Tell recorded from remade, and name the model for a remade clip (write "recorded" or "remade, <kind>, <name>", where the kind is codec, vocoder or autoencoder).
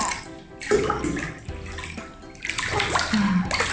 recorded